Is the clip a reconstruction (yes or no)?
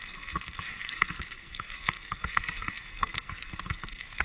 yes